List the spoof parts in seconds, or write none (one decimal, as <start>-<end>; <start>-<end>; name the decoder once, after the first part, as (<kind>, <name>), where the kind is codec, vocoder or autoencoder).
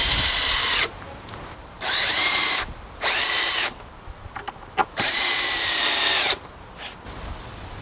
0.6-2.5 (vocoder, BigVGAN v2); 4.8-5.8